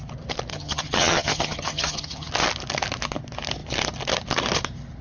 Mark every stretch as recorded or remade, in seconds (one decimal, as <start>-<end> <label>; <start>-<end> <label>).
0.0-0.5 recorded; 0.5-2.3 remade; 2.3-5.0 recorded

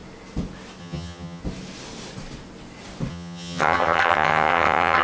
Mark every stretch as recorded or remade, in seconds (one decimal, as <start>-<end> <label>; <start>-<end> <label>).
0.0-0.8 recorded; 0.8-1.4 remade; 1.4-3.1 recorded; 3.1-5.0 remade